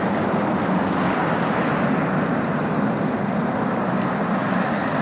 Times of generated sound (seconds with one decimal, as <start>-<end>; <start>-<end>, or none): 0.6-1.2

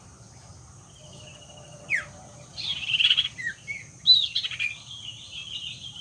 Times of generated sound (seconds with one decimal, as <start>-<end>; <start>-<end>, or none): none